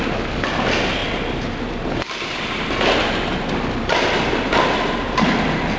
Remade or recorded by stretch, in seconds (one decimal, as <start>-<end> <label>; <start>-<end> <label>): 0.0-5.8 recorded